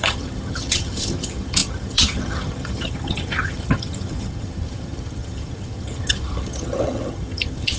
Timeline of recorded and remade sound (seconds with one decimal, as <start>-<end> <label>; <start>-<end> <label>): 0.0-7.8 remade